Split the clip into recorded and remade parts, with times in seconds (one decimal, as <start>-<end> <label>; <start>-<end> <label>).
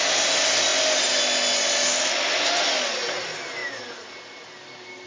0.0-5.1 recorded